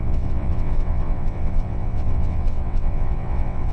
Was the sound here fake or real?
fake